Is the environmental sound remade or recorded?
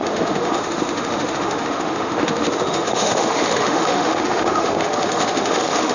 remade